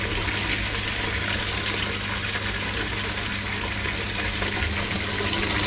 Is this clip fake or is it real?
real